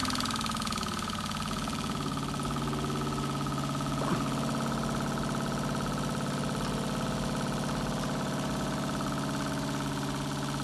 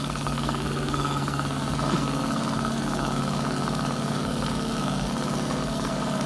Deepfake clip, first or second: second